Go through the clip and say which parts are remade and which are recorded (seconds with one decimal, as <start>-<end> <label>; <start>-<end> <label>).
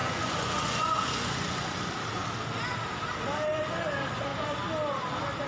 0.0-1.6 remade; 1.6-5.5 recorded